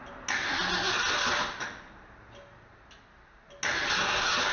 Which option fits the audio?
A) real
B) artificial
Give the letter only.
A